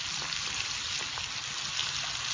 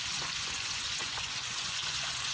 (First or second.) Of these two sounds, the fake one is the second